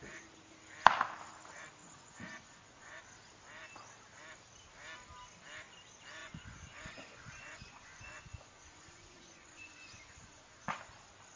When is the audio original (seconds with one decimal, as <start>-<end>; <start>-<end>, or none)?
0.0-1.8; 3.0-6.2; 10.8-11.4